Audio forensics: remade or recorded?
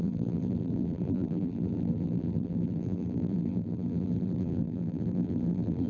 remade